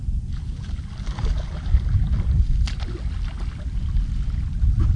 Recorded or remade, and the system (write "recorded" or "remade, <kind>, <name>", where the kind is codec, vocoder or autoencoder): recorded